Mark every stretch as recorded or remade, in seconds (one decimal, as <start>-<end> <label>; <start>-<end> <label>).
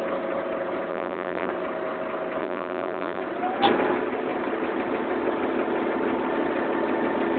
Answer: 0.0-0.9 recorded; 0.9-1.5 remade; 1.5-2.4 recorded; 2.4-3.2 remade; 3.2-7.4 recorded